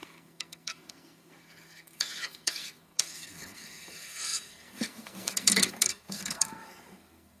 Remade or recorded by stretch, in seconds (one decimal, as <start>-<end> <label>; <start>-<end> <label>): 0.0-7.4 remade